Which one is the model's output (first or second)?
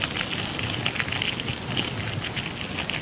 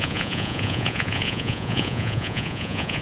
second